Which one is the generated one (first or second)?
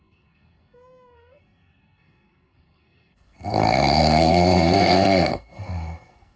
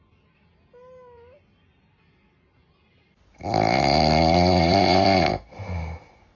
first